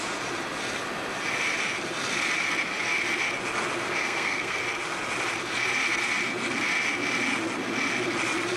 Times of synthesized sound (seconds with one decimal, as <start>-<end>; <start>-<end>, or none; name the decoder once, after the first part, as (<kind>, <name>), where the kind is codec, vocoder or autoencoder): 4.0-4.6 (codec, SNAC)